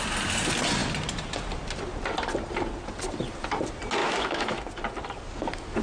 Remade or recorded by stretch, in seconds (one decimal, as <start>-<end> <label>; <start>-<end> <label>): 0.0-4.0 recorded; 4.0-4.6 remade; 4.6-5.8 recorded